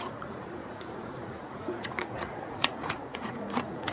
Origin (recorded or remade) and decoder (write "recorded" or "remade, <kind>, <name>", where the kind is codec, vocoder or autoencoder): remade, vocoder, Vocos